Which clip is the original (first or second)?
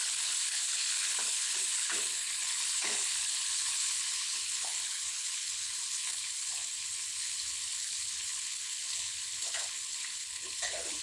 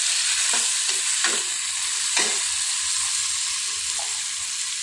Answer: second